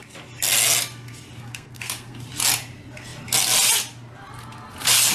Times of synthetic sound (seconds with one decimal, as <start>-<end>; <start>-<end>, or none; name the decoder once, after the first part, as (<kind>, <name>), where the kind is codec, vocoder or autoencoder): 1.5-2.2 (codec, SNAC)